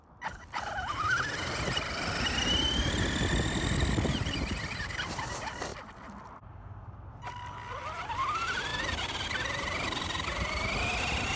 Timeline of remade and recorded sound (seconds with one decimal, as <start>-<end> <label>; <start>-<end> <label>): 0.0-1.0 remade; 1.0-4.2 recorded; 4.2-5.7 remade; 5.7-6.5 recorded; 6.5-8.7 remade; 8.7-11.4 recorded